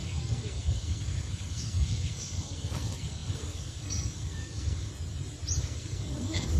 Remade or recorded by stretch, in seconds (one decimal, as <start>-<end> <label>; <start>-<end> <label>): 0.0-4.9 remade; 4.9-5.6 recorded; 5.6-6.6 remade